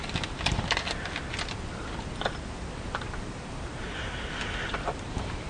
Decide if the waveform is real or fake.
fake